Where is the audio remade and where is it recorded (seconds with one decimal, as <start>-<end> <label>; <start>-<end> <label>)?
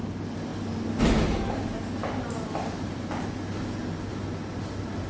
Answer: 0.0-2.0 recorded; 2.0-3.2 remade; 3.2-5.1 recorded